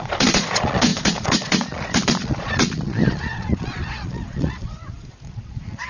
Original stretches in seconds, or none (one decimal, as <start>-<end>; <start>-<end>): none